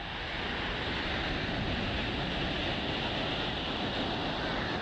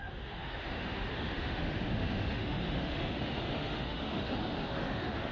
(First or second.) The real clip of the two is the first